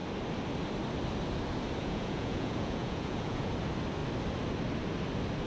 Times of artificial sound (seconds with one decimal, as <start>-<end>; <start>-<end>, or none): 1.8-3.5